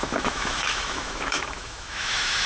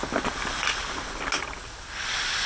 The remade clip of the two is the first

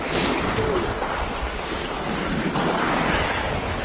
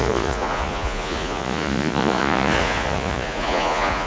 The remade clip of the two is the second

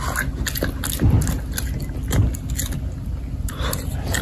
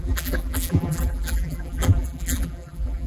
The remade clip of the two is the second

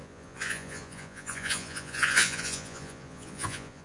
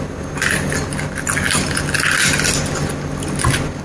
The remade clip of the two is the first